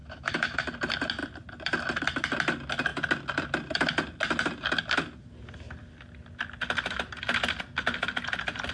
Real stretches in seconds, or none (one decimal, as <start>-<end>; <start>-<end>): 0.6-8.7